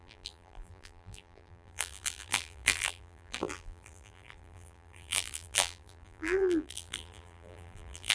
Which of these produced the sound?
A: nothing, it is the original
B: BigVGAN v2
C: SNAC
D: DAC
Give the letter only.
B